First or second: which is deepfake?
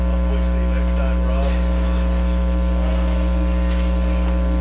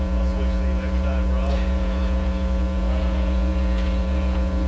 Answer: second